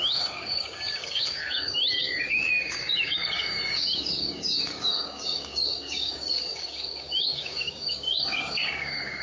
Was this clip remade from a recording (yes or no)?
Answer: yes